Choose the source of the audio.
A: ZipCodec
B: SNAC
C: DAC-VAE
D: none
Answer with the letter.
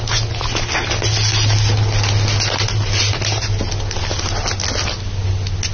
D